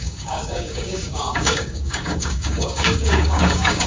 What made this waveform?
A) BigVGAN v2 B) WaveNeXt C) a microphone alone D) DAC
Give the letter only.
D